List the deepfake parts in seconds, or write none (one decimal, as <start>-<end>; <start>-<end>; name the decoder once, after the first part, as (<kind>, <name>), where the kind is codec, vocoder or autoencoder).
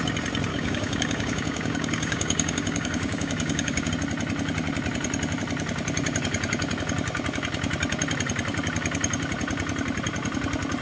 0.5-3.9 (codec, DAC)